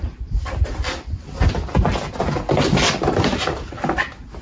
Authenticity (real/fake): real